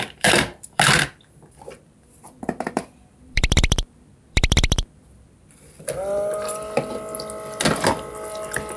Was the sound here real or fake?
fake